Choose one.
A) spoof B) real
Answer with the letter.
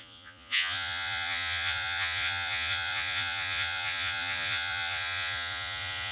A